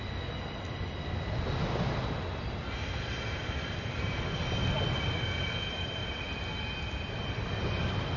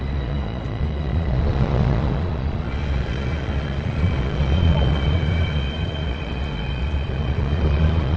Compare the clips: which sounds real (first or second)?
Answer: first